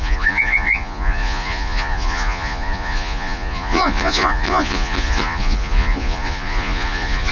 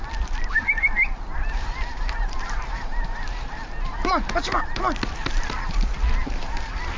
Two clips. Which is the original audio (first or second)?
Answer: second